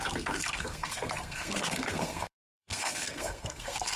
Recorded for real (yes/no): no